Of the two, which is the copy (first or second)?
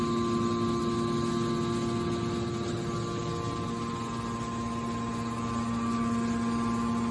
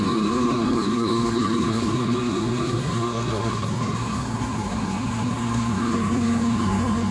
second